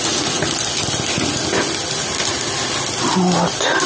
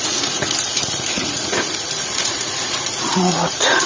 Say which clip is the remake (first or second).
second